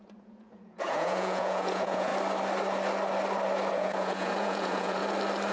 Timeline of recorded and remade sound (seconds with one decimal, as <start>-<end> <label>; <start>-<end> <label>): 0.0-2.1 remade; 2.1-3.7 recorded; 3.7-5.0 remade; 5.0-5.5 recorded